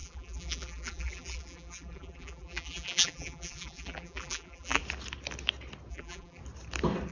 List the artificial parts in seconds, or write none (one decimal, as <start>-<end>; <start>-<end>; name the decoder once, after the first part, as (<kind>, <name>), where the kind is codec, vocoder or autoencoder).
0.0-4.8 (vocoder, BigVGAN v2); 5.9-6.4